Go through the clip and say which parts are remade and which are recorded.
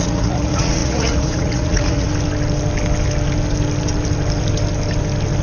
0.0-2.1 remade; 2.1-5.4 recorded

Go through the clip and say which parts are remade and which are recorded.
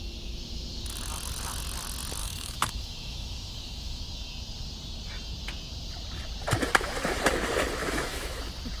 0.0-2.2 recorded; 2.2-4.0 remade; 4.0-7.8 recorded; 7.8-8.4 remade; 8.4-8.8 recorded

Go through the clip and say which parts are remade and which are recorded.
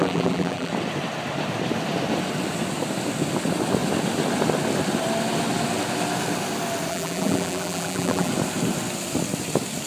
0.0-0.7 remade; 0.7-6.9 recorded; 6.9-8.3 remade; 8.3-9.9 recorded